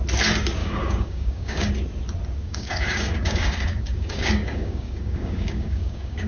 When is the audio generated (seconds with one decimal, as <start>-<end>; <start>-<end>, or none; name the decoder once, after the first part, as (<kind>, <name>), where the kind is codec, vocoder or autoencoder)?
0.6-1.7 (codec, DAC); 2.4-6.3